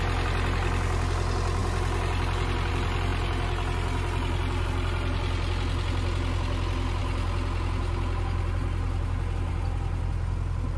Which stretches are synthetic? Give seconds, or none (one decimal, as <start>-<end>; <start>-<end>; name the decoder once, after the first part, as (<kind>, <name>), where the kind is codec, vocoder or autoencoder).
none